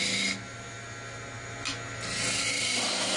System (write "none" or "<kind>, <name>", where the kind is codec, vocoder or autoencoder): none